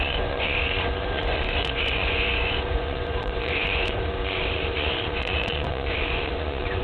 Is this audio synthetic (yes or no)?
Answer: yes